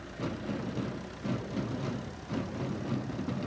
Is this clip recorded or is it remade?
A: recorded